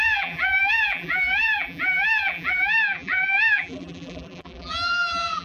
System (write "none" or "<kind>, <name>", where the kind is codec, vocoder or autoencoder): vocoder, BigVGAN v2